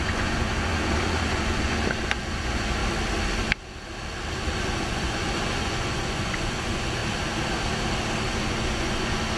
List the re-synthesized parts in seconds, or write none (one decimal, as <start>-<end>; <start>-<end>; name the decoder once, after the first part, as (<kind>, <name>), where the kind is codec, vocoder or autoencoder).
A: 0.0-2.8 (vocoder, Vocos); 4.6-7.0; 8.3-9.4